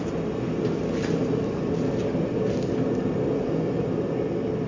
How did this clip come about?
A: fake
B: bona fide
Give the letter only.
B